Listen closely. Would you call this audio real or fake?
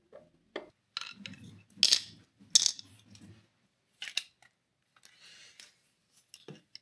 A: real